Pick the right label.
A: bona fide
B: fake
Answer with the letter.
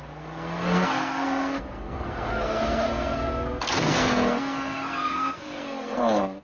B